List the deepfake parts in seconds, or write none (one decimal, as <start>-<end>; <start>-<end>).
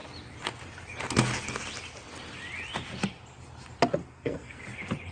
4.0-4.6